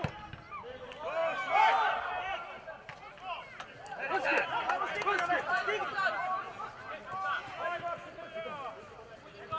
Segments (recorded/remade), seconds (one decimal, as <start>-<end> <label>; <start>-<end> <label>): 0.0-9.6 recorded